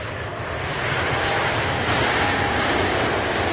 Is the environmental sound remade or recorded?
recorded